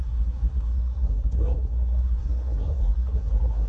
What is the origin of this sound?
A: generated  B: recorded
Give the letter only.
A